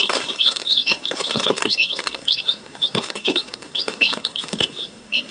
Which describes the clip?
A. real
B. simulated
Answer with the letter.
B